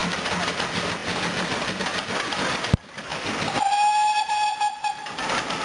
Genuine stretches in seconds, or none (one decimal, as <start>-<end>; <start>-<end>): 0.0-5.6